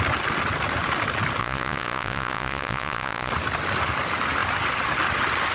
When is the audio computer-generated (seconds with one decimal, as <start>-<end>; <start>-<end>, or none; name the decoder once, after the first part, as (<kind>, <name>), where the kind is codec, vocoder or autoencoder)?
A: 1.4-3.3 (vocoder, Vocos)